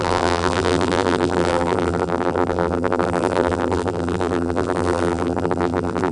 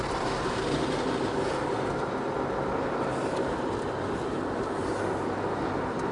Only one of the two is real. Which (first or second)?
second